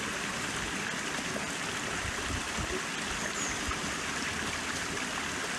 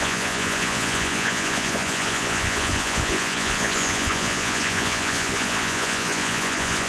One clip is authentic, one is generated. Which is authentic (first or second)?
first